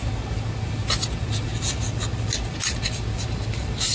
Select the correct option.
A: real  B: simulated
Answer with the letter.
A